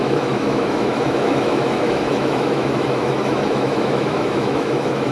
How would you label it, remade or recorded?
remade